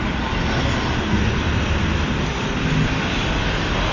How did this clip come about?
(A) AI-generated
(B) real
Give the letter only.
B